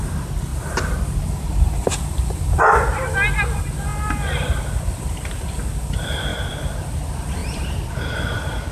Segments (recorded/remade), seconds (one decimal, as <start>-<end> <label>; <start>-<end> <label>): 0.0-0.5 recorded; 0.5-2.0 remade; 2.0-6.3 recorded; 6.3-6.9 remade; 6.9-7.4 recorded; 7.4-8.7 remade